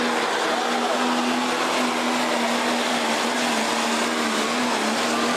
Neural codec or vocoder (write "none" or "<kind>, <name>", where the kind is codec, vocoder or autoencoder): none